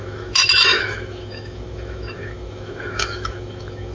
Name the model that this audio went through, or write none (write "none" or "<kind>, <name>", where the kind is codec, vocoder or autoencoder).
autoencoder, DAC-VAE